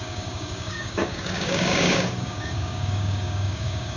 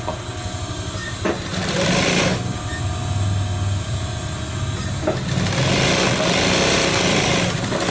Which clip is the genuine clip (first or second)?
second